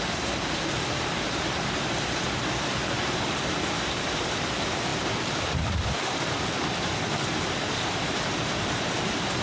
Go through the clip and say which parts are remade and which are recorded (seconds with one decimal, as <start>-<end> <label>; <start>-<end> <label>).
0.0-9.4 remade